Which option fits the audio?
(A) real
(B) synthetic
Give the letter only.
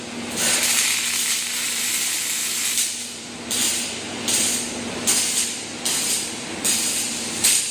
B